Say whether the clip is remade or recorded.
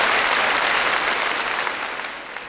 recorded